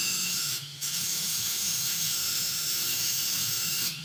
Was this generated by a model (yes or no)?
yes